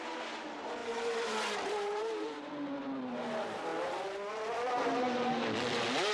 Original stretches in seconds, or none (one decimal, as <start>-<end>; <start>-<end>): 0.0-0.8; 2.5-3.7; 4.3-6.1